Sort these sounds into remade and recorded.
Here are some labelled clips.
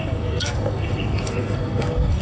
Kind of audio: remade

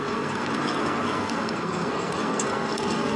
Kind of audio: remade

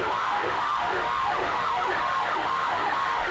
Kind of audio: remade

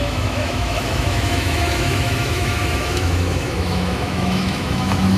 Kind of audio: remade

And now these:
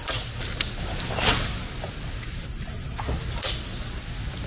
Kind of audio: recorded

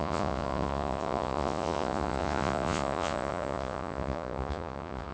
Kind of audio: remade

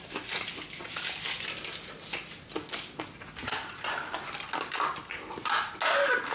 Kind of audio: recorded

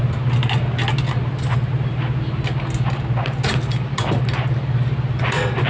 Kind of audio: recorded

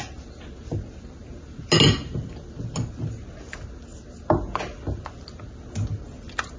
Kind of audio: recorded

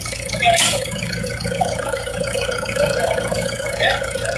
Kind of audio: remade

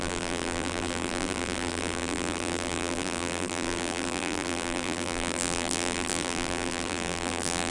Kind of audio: remade